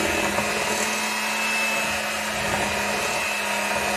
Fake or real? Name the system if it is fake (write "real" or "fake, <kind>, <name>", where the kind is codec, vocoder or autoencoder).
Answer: real